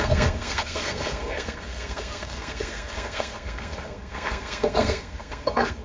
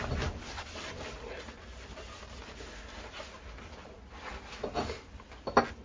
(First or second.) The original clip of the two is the second